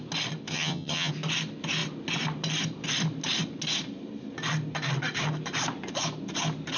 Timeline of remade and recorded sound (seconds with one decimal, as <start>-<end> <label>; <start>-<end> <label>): 0.0-0.5 recorded; 0.5-1.1 remade; 1.1-6.8 recorded